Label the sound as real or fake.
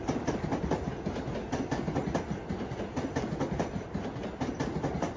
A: real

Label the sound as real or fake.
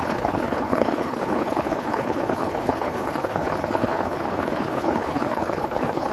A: fake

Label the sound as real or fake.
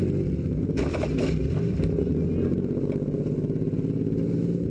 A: real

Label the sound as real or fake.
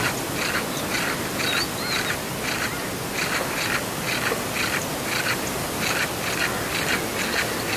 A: real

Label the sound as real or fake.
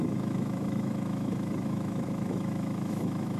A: fake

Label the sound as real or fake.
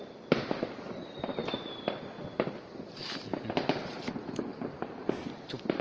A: real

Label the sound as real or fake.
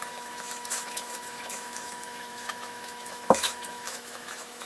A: fake